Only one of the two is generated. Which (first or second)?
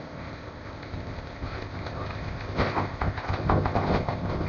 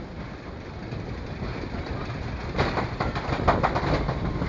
first